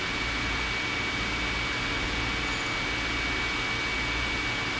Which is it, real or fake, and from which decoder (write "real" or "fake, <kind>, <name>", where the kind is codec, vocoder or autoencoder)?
real